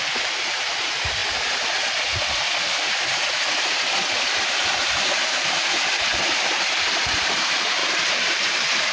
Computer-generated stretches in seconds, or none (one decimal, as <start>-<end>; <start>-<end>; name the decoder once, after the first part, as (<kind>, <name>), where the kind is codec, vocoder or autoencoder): 0.0-1.2 (vocoder, BigVGAN v2); 4.5-8.9